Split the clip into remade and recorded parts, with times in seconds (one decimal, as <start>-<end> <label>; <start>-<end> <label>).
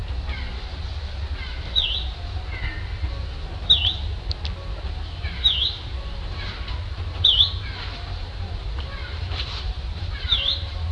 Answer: 0.0-4.7 recorded; 4.7-10.9 remade